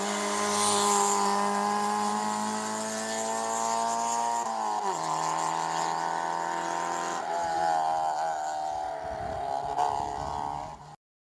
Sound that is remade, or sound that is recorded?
recorded